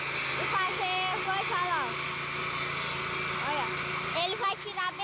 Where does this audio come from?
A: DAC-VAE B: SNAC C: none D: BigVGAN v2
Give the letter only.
C